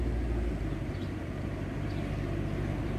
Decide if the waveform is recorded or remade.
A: recorded